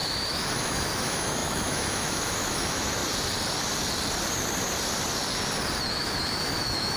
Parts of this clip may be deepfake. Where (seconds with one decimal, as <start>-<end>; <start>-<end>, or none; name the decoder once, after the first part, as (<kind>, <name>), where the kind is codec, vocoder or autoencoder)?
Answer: 0.0-3.0 (autoencoder, DAC-VAE); 5.9-7.0